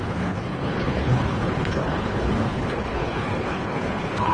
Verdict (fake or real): fake